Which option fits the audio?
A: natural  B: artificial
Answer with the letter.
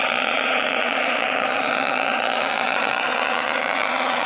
B